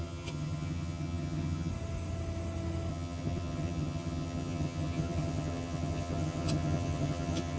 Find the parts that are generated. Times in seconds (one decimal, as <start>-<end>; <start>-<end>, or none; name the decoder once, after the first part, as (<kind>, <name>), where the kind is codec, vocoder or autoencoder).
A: 0.0-1.7 (vocoder, HiFi-GAN); 2.9-7.6